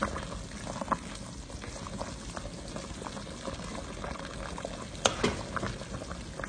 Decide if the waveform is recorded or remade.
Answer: recorded